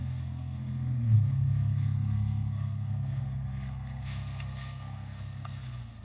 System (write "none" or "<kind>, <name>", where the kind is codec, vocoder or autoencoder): codec, SNAC